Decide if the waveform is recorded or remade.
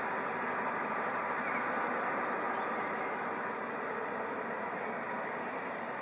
recorded